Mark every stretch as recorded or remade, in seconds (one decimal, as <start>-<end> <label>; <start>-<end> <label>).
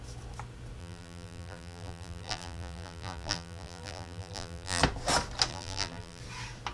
0.0-0.8 recorded; 0.8-4.8 remade; 4.8-5.5 recorded; 5.5-6.2 remade; 6.2-6.7 recorded